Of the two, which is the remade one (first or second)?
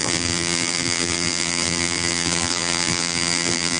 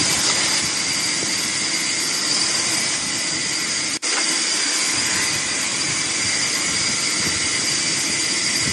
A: first